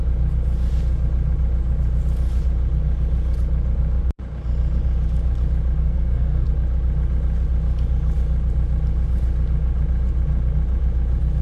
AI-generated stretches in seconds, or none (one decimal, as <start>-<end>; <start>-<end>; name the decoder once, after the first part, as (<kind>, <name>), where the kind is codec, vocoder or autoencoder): 5.8-6.5 (codec, SNAC)